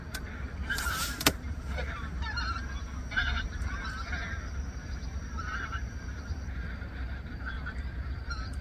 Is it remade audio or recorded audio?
remade